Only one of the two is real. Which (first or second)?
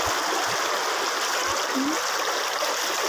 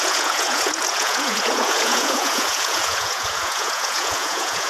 first